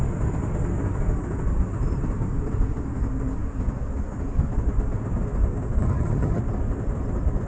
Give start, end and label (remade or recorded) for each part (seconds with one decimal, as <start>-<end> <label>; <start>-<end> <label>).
0.0-5.8 recorded; 5.8-6.4 remade; 6.4-7.5 recorded